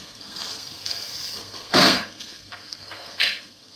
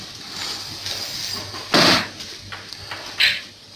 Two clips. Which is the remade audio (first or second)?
first